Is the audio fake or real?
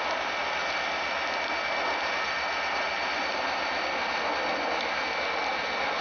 real